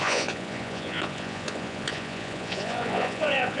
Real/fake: fake